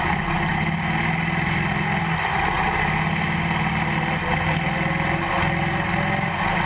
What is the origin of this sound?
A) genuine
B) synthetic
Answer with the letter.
A